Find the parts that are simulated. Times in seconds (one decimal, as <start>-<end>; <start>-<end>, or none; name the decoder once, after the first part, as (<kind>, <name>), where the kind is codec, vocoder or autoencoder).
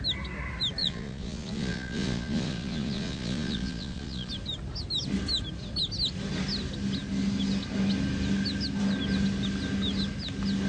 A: 0.8-4.3 (vocoder, Vocos)